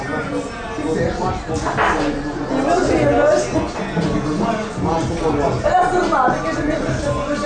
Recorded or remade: recorded